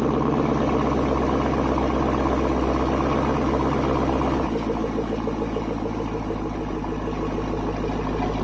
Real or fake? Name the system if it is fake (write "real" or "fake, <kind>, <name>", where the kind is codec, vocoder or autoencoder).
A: real